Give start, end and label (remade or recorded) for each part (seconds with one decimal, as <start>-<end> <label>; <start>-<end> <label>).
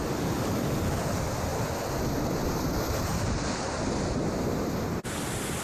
0.0-5.6 recorded